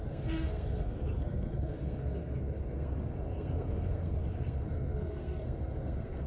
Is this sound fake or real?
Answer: fake